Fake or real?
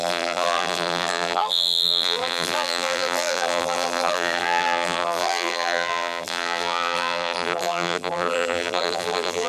fake